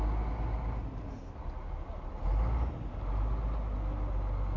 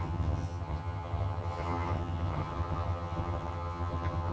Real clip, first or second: first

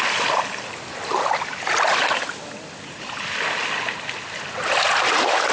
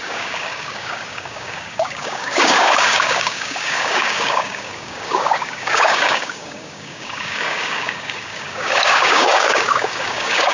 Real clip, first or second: first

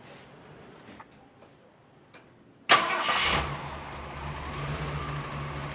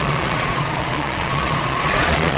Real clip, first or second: first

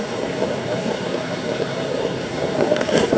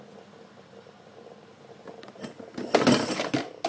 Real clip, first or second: second